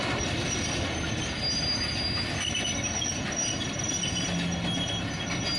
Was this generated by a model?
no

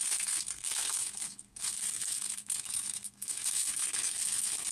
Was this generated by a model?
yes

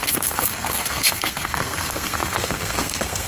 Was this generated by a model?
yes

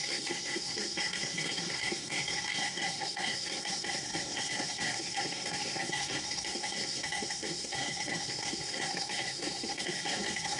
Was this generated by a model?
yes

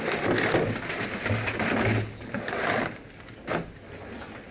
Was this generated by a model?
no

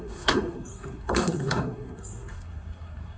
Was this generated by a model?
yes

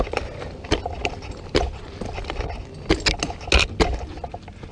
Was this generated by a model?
no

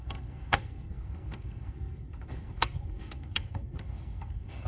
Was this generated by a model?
yes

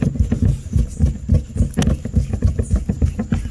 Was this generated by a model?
no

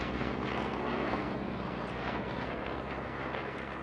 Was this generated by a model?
yes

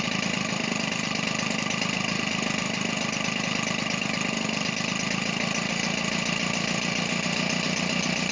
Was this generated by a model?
no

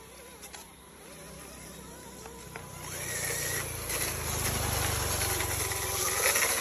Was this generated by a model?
no